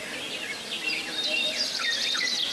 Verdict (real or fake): real